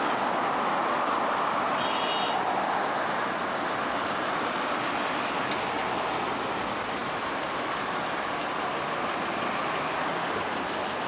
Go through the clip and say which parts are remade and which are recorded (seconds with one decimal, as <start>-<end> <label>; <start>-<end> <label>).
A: 0.0-11.1 recorded